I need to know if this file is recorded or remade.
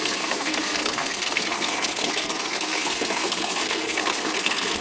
remade